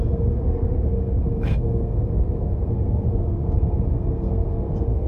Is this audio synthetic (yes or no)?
yes